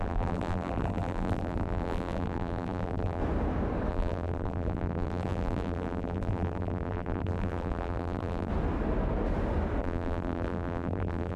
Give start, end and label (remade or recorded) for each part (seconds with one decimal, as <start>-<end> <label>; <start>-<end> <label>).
0.0-3.2 remade; 3.2-3.9 recorded; 3.9-8.5 remade; 8.5-9.8 recorded; 9.8-11.4 remade